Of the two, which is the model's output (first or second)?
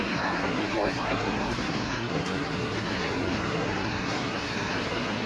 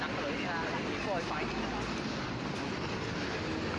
first